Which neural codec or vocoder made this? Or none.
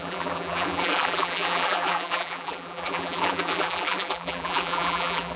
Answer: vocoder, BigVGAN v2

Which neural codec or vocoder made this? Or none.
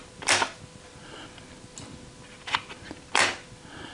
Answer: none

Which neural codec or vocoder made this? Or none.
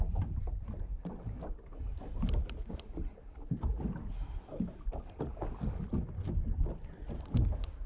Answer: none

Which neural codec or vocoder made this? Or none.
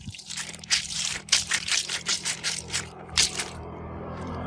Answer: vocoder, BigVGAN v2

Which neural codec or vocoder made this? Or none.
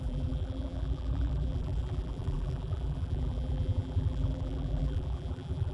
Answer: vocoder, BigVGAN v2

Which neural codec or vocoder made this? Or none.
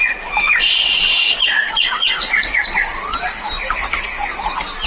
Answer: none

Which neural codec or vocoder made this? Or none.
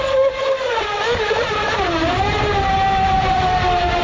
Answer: vocoder, BigVGAN v2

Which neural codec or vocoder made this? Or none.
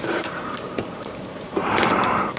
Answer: vocoder, BigVGAN v2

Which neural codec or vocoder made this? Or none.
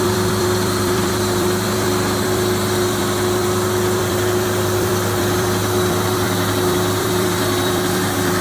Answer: vocoder, BigVGAN v2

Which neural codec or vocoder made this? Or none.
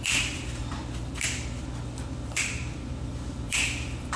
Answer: vocoder, BigVGAN v2